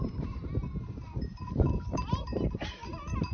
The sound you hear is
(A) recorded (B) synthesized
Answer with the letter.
B